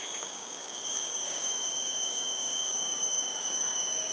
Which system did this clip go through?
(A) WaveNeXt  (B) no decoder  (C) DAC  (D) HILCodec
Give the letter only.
C